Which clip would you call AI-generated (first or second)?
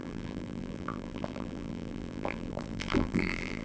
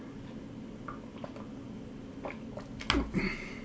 first